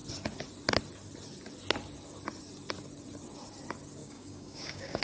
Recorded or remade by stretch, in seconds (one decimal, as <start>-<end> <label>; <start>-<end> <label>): 0.0-4.0 recorded; 4.0-5.0 remade